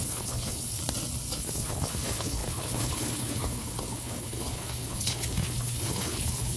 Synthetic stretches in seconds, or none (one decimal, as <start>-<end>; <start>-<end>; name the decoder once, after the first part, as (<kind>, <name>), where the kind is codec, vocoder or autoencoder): 0.0-0.8 (codec, HILCodec); 1.4-6.6